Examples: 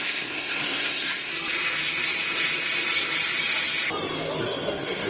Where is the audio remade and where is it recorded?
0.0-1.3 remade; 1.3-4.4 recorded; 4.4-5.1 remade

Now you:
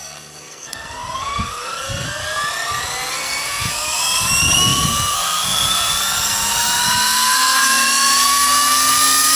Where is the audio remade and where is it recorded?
0.0-2.2 remade; 2.2-3.1 recorded; 3.1-9.4 remade

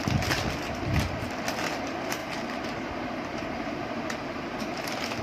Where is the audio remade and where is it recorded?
0.0-5.2 recorded